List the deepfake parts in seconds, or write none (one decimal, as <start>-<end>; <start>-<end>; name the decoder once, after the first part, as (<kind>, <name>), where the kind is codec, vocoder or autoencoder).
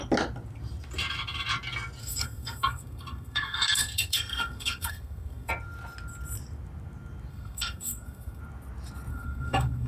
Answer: 2.0-5.5 (codec, SNAC); 7.3-8.4; 9.1-9.9